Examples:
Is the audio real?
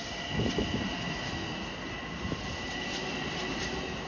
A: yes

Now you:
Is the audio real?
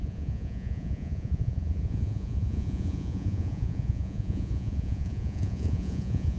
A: no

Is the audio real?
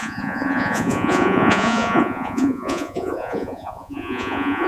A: no